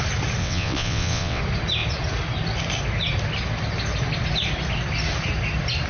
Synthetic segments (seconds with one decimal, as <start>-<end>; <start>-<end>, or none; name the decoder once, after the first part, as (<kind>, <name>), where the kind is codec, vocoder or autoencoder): 0.4-1.4 (vocoder, WaveNeXt)